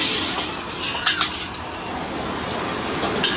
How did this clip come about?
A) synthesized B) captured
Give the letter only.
B